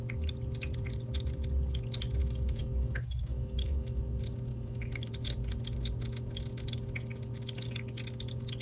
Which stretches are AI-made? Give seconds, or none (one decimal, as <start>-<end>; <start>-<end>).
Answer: 2.2-4.0; 4.5-5.1